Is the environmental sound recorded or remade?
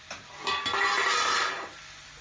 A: recorded